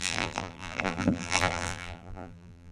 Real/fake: fake